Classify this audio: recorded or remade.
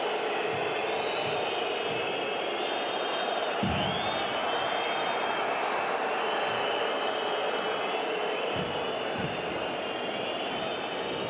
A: recorded